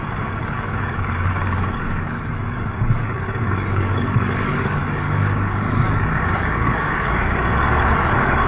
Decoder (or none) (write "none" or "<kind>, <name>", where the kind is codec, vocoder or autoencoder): codec, DAC